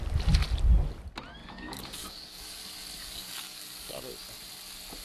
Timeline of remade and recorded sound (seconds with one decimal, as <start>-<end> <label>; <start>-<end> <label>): 0.0-1.4 recorded; 1.4-2.6 remade; 2.6-3.0 recorded; 3.0-4.1 remade; 4.1-5.0 recorded